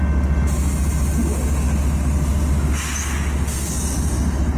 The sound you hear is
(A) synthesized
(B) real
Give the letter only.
B